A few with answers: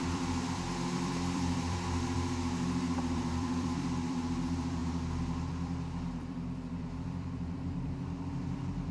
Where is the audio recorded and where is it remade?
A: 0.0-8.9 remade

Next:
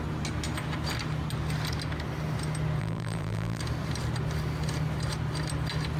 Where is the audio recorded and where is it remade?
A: 0.0-2.8 recorded; 2.8-3.6 remade; 3.6-6.0 recorded

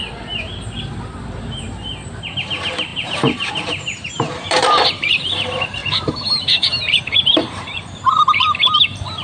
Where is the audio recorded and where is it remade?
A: 0.0-9.2 remade

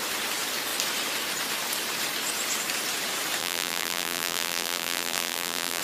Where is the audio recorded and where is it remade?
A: 0.0-3.4 recorded; 3.4-5.8 remade

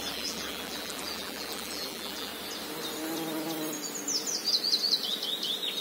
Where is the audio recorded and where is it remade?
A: 0.0-2.3 remade; 2.3-5.8 recorded

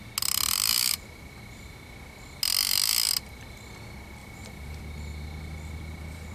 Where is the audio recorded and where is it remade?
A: 0.0-4.2 recorded; 4.2-4.8 remade; 4.8-6.3 recorded